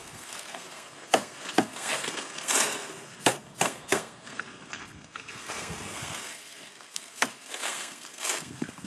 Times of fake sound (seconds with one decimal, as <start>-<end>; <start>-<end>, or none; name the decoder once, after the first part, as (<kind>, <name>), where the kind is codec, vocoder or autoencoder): 0.0-8.9 (codec, SNAC)